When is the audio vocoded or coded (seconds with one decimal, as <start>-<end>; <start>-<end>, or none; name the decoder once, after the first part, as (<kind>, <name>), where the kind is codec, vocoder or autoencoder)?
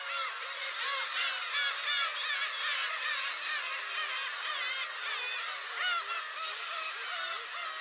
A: none